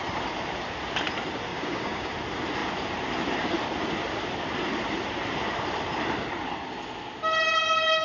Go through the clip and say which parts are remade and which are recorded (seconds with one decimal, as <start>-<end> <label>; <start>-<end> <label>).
0.0-1.5 recorded; 1.5-2.1 remade; 2.1-8.0 recorded